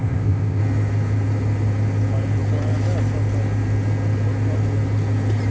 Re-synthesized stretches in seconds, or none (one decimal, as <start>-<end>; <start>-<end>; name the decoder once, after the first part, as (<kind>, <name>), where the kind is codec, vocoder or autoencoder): 0.0-0.6 (codec, ZipCodec)

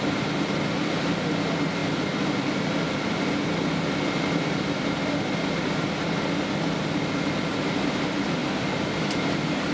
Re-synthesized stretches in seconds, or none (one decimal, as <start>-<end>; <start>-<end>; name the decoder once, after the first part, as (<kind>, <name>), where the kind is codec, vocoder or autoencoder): none